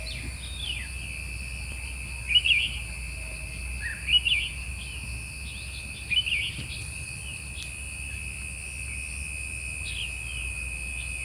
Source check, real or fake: real